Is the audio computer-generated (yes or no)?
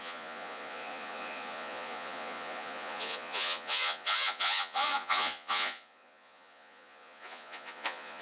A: yes